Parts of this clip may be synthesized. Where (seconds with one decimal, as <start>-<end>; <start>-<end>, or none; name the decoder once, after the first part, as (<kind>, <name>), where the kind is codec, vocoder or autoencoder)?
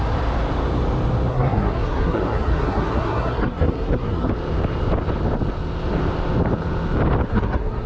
1.3-4.3 (codec, SNAC); 7.3-7.9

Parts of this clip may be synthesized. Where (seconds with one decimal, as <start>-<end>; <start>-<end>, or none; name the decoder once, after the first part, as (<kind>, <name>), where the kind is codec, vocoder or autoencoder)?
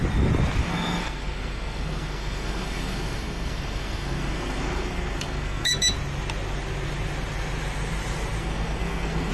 0.6-5.8 (codec, SNAC); 8.4-9.3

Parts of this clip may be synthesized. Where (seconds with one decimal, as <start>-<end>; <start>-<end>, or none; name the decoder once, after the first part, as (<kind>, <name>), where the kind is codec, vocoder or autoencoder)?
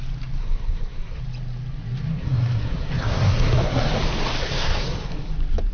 0.4-1.2 (codec, SNAC); 2.1-4.0; 4.4-5.3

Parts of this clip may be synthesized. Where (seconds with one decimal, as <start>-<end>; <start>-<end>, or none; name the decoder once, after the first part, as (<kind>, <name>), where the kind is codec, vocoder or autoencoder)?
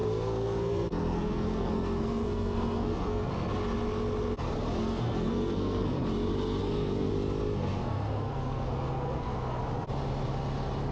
0.0-3.3 (codec, SNAC); 4.8-6.0; 6.6-7.1; 7.6-9.6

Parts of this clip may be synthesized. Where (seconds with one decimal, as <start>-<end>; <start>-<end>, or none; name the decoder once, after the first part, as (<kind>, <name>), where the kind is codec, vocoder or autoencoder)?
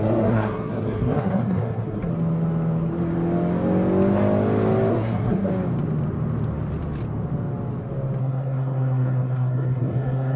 0.0-2.1 (codec, SNAC); 4.9-5.5; 8.2-10.4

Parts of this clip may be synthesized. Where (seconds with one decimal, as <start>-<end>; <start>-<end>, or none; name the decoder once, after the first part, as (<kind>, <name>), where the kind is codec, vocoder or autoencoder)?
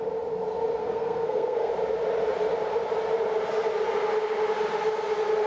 0.8-1.7 (codec, SNAC)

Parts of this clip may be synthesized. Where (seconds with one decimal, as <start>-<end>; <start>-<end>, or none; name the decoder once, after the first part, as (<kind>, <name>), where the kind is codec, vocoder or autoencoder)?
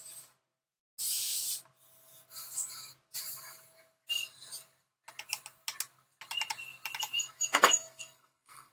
7.5-8.7 (codec, SNAC)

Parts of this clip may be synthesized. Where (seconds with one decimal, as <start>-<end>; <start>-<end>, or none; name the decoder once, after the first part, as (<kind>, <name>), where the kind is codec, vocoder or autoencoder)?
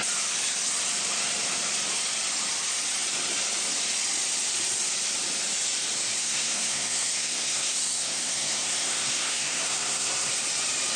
6.2-10.3 (codec, SNAC)